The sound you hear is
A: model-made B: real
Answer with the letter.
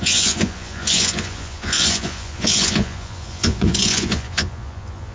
A